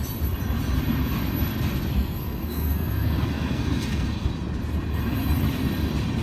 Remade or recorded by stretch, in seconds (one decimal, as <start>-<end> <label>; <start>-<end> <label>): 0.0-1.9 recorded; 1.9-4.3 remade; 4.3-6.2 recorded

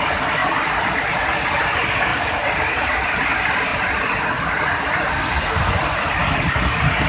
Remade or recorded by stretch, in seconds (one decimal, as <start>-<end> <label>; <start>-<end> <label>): 0.0-5.1 recorded; 5.1-5.7 remade; 5.7-7.1 recorded

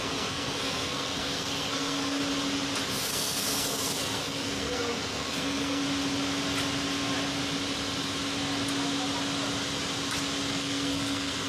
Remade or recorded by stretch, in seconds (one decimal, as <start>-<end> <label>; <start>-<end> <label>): 0.0-2.2 remade; 2.2-3.0 recorded; 3.0-5.8 remade; 5.8-10.5 recorded; 10.5-11.5 remade

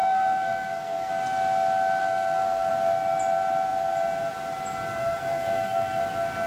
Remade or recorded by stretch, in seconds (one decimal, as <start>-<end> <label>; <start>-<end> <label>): 0.0-1.1 remade; 1.1-2.0 recorded; 2.0-2.7 remade; 2.7-5.0 recorded; 5.0-6.0 remade; 6.0-6.5 recorded

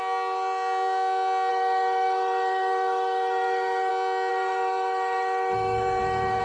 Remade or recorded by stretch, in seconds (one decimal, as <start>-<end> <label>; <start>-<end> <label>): 0.0-1.5 recorded; 1.5-3.9 remade; 3.9-4.3 recorded; 4.3-6.4 remade